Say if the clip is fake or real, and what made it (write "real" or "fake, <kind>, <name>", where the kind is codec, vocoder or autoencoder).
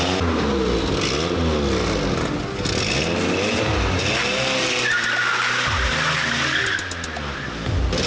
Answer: real